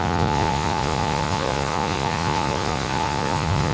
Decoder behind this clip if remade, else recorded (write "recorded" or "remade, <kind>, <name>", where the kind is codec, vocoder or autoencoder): remade, vocoder, Vocos